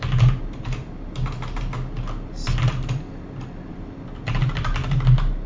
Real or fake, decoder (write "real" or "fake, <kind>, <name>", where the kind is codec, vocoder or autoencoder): real